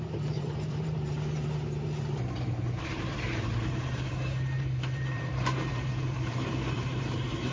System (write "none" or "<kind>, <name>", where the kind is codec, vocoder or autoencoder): vocoder, BigVGAN v2